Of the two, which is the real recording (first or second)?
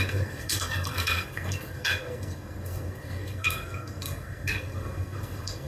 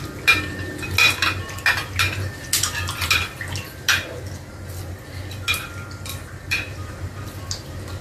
second